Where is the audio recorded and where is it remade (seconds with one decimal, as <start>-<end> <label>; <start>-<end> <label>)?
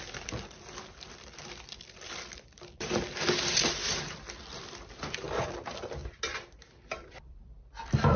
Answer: 0.0-6.0 remade; 6.0-6.9 recorded; 6.9-8.2 remade